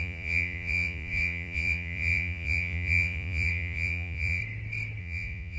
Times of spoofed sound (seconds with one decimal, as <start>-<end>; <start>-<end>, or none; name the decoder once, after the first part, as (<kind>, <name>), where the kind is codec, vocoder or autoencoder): 0.0-4.4 (vocoder, Vocos); 5.0-5.6